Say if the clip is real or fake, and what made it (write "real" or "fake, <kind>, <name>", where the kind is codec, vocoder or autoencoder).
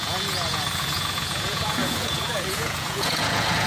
fake, vocoder, Vocos